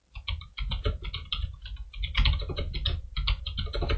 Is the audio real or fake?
real